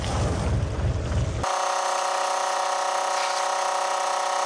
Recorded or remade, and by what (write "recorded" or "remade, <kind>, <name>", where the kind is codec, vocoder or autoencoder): recorded